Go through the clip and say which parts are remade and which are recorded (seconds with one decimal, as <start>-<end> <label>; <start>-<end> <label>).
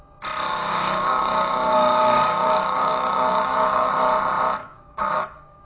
0.0-0.5 recorded; 0.5-3.9 remade; 3.9-4.6 recorded; 4.6-5.6 remade